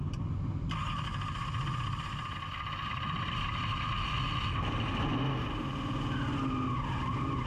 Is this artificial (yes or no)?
no